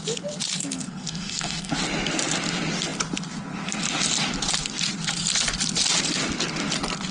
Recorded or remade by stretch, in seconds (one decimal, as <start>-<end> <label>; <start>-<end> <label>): 0.0-0.6 recorded; 0.6-1.7 remade; 1.7-7.1 recorded